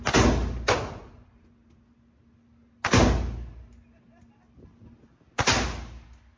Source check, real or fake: real